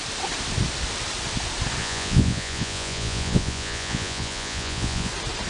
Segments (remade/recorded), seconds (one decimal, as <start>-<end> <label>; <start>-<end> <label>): 0.0-1.8 recorded; 1.8-5.1 remade; 5.1-5.5 recorded